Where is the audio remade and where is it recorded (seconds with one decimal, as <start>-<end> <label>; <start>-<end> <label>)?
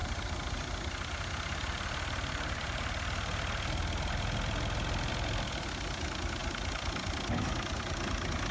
0.0-8.5 recorded